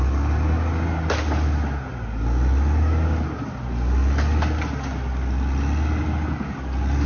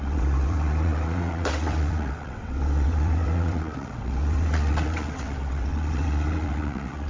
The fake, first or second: second